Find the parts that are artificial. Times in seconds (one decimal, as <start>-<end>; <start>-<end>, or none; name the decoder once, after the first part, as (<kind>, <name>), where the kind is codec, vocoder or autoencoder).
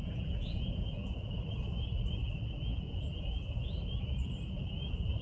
0.0-1.3 (vocoder, Vocos); 2.7-3.7